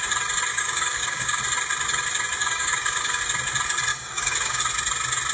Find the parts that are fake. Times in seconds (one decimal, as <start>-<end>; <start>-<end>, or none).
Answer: 0.5-1.4; 2.4-3.2; 3.9-4.6